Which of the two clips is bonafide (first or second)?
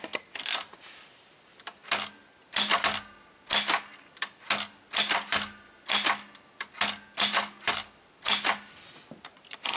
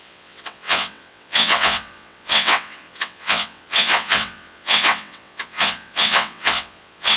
first